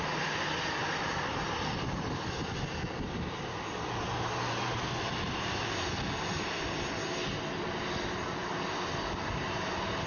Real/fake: real